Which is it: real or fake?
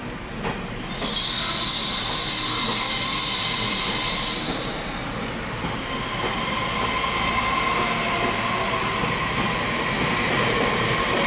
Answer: real